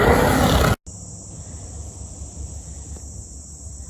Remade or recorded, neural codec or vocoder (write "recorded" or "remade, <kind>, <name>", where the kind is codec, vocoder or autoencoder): recorded